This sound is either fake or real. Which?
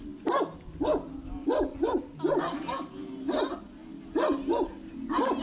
real